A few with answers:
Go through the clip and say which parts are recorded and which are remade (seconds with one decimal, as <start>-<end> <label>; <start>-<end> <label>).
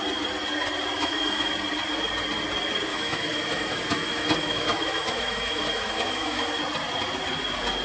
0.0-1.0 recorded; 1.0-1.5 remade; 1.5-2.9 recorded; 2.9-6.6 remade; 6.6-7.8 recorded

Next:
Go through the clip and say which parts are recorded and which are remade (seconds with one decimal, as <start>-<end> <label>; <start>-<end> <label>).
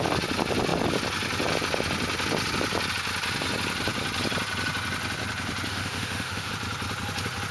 0.0-5.7 recorded; 5.7-6.5 remade; 6.5-7.5 recorded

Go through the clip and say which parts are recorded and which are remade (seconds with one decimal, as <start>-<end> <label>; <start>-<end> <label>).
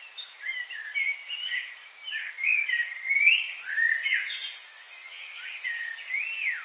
0.0-4.0 recorded; 4.0-5.4 remade; 5.4-6.6 recorded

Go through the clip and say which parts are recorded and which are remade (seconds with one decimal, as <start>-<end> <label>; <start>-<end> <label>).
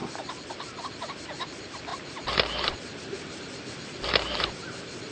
0.0-5.1 remade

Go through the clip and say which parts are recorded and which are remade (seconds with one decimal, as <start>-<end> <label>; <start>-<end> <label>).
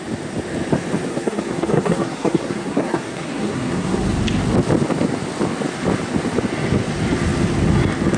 0.0-1.1 recorded; 1.1-4.0 remade; 4.0-8.2 recorded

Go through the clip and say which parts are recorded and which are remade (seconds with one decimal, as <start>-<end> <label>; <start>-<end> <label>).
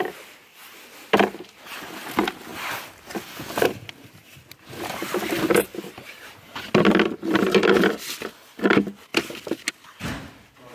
0.0-2.5 recorded; 2.5-3.1 remade; 3.1-10.7 recorded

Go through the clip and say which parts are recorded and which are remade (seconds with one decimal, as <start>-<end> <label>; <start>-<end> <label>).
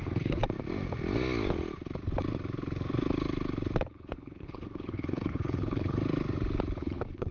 0.0-0.4 remade; 0.4-3.9 recorded; 3.9-6.0 remade; 6.0-6.8 recorded; 6.8-7.3 remade